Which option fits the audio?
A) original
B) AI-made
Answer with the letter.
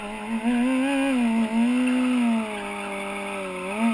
A